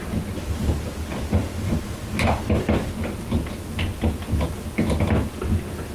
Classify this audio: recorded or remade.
recorded